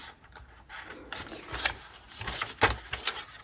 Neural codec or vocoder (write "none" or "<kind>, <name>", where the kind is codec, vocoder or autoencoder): none